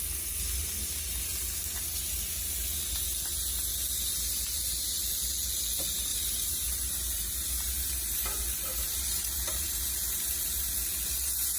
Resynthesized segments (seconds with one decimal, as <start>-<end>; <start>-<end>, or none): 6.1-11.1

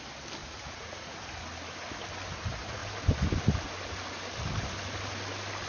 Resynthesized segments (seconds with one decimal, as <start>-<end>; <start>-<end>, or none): 0.4-1.2

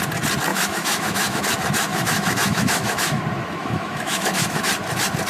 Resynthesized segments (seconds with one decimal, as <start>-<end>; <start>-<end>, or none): 0.5-1.4; 1.9-3.2; 3.6-4.7

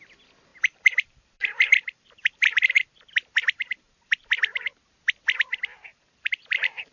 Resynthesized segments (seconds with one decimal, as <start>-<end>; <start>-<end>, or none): 0.5-3.1; 3.6-4.3; 5.9-6.9

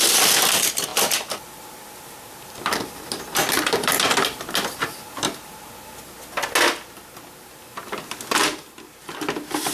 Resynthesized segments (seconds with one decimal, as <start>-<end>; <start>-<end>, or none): 0.0-3.9; 9.0-9.7